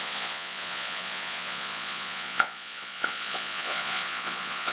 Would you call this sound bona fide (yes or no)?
no